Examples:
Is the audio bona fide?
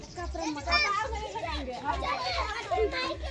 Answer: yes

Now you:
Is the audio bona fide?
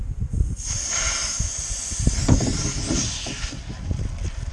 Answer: yes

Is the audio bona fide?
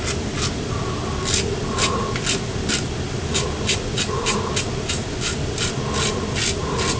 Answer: yes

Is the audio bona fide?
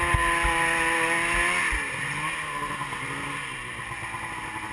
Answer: yes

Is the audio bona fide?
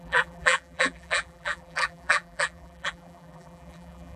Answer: no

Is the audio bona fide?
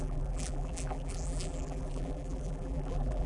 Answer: no